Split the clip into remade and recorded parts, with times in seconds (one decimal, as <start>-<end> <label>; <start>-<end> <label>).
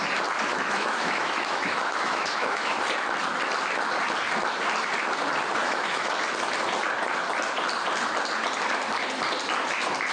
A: 0.0-0.5 recorded; 0.5-2.8 remade; 2.8-5.6 recorded; 5.6-6.1 remade; 6.1-10.1 recorded